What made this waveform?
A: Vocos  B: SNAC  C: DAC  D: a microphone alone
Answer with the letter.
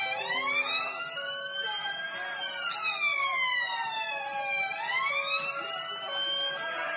D